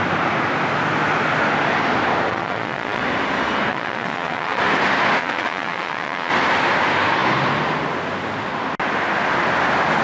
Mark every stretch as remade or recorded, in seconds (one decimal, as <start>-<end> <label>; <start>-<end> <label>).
0.0-2.3 recorded; 2.3-3.0 remade; 3.0-3.7 recorded; 3.7-4.6 remade; 4.6-5.2 recorded; 5.2-6.3 remade; 6.3-10.0 recorded